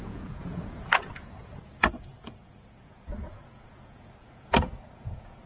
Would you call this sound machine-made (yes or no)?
yes